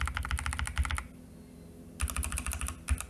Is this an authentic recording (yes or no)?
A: yes